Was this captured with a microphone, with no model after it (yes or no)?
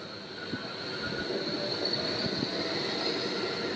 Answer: yes